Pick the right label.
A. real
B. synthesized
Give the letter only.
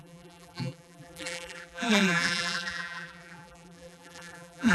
B